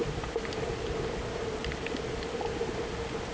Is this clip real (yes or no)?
yes